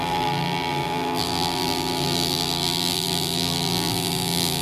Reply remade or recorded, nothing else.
remade